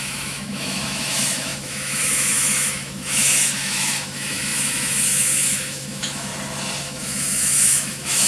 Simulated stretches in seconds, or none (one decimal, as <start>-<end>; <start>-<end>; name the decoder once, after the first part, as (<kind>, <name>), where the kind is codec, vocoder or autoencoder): 0.0-6.3 (autoencoder, DAC-VAE); 6.8-8.3